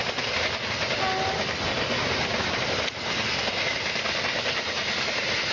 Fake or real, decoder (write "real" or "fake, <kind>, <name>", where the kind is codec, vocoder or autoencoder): real